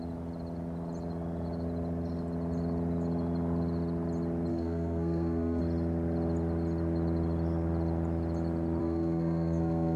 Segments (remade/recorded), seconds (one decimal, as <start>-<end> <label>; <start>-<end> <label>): 0.0-4.5 recorded; 4.5-5.6 remade; 5.6-8.8 recorded; 8.8-10.0 remade